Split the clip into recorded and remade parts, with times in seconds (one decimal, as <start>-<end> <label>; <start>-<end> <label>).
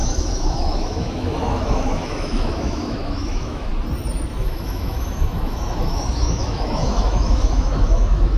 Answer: 0.0-3.7 remade; 3.7-4.3 recorded; 4.3-8.4 remade